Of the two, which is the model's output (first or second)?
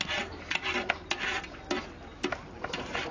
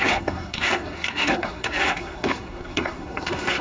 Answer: second